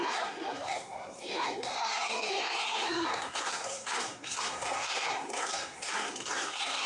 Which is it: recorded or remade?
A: remade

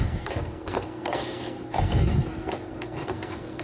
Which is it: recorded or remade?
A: remade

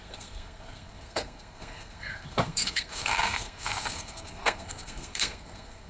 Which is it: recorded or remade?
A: remade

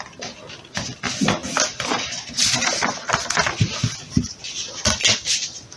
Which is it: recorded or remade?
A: recorded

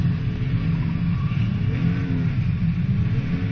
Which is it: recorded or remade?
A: recorded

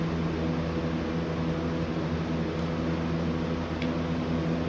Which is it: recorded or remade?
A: recorded